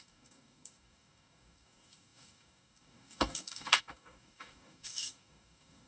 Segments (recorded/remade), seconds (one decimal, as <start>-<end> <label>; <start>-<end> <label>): 0.0-5.9 remade